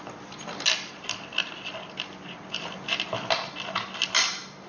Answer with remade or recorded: recorded